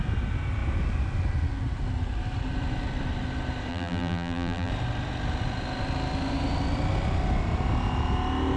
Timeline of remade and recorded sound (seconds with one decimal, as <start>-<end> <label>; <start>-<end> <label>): 0.0-3.7 recorded; 3.7-4.7 remade; 4.7-8.6 recorded